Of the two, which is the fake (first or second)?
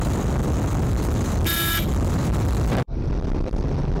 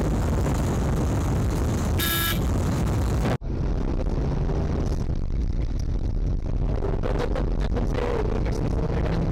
first